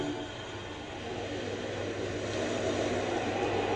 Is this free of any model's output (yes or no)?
yes